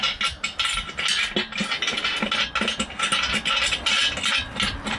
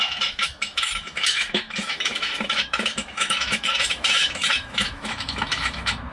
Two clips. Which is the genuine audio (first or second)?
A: first